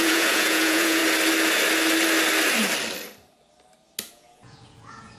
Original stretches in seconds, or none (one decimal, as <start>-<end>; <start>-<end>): 1.0-4.1